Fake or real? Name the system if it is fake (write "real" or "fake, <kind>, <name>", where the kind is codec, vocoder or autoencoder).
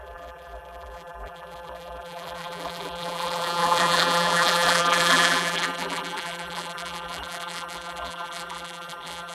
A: fake, vocoder, BigVGAN v2